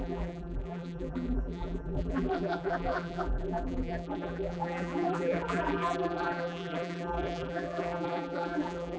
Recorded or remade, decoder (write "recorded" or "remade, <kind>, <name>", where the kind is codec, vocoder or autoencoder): remade, vocoder, BigVGAN v2